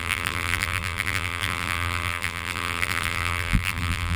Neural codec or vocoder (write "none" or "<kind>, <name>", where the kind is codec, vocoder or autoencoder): vocoder, BigVGAN v2